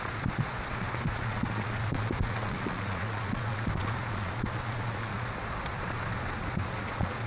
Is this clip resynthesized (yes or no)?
yes